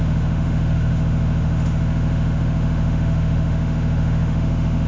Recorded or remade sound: remade